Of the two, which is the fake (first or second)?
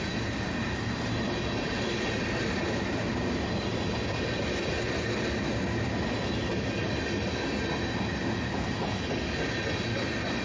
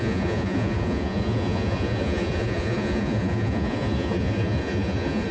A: second